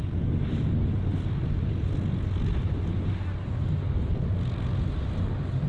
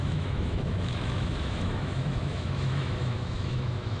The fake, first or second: second